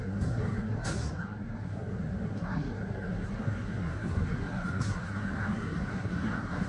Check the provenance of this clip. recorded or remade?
remade